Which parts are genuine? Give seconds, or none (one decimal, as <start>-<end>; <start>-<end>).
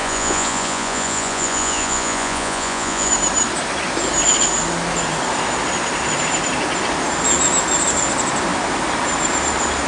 3.1-9.9